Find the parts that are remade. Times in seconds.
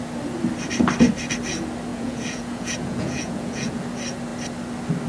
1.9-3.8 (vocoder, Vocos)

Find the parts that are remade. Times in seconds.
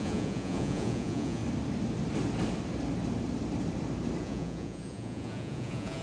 0.0-1.4 (vocoder, Vocos); 4.2-6.0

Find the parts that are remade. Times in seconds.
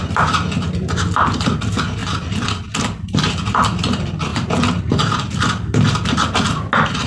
none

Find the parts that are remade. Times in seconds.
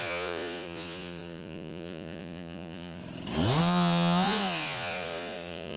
0.0-3.0 (vocoder, Vocos); 3.6-5.8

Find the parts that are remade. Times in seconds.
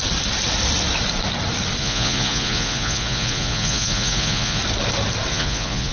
1.8-4.6 (vocoder, Vocos); 5.3-5.9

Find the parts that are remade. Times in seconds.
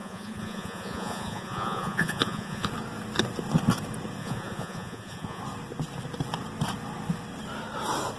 0.0-2.7 (vocoder, Vocos); 4.2-5.4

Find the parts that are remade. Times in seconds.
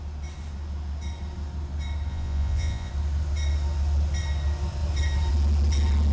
2.1-2.9 (vocoder, Vocos)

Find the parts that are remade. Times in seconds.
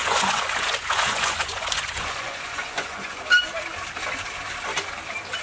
0.0-3.2 (vocoder, Vocos)